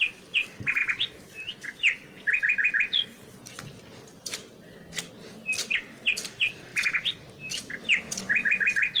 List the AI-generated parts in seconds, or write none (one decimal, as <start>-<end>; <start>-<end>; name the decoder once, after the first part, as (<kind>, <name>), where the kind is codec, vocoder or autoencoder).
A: none